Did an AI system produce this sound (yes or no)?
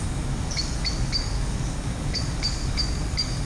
yes